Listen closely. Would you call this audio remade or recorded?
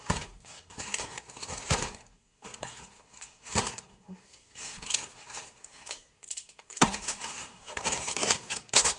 remade